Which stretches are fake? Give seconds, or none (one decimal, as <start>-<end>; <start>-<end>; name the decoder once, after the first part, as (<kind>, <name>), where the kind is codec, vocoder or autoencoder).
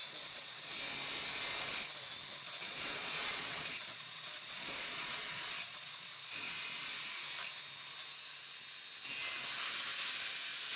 0.0-0.7 (vocoder, Vocos); 2.5-7.2